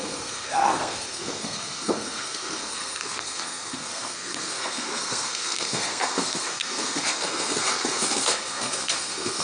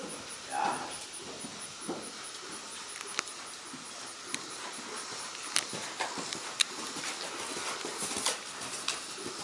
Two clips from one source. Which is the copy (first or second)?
first